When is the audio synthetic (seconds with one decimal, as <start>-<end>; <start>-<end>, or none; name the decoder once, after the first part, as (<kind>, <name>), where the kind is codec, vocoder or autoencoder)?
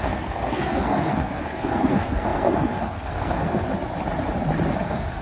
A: 0.0-3.7 (codec, SNAC); 4.7-5.2